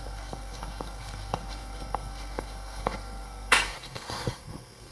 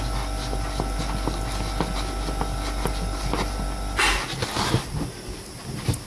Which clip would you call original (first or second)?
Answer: second